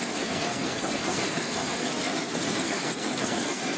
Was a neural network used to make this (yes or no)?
yes